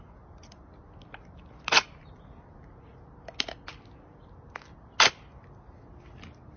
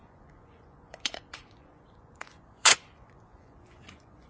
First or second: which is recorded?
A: first